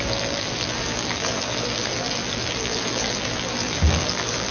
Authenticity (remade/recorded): remade